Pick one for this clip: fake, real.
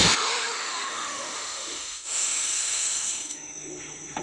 fake